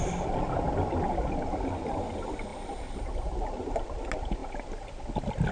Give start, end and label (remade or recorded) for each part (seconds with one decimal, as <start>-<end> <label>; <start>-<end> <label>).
0.0-5.5 recorded